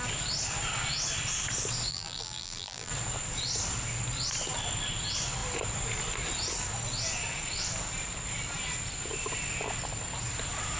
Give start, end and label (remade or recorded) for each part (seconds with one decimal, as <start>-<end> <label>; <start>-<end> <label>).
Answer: 0.0-1.9 recorded; 1.9-2.9 remade; 2.9-10.8 recorded